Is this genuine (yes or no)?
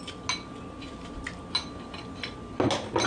yes